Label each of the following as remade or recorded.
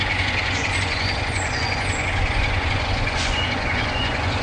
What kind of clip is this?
remade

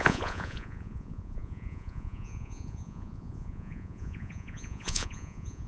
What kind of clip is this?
remade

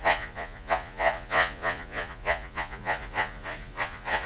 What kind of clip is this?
remade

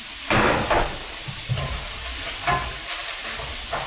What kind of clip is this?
recorded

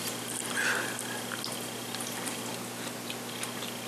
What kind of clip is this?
recorded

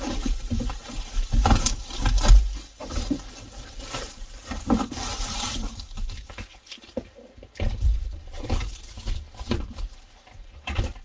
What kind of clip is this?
recorded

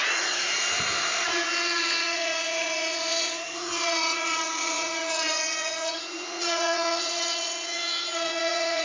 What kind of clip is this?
remade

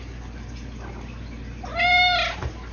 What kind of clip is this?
recorded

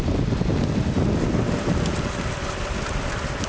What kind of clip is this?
recorded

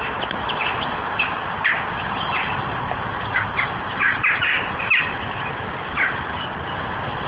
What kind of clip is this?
recorded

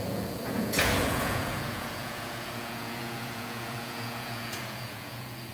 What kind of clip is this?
remade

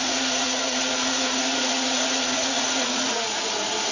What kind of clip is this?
remade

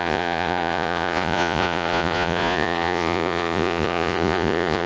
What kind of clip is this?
remade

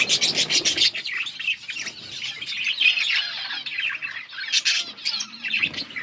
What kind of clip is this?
recorded